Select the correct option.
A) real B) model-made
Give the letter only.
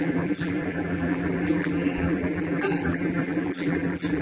B